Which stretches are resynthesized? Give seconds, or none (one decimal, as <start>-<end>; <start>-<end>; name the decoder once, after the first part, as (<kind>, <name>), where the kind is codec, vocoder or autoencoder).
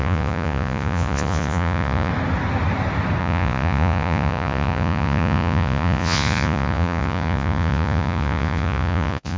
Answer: 0.0-2.1 (vocoder, Vocos); 3.2-9.4